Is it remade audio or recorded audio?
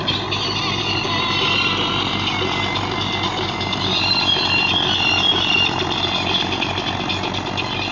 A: recorded